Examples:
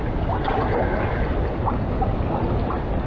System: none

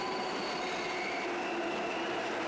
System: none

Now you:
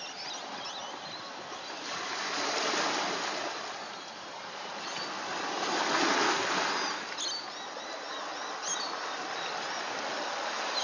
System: none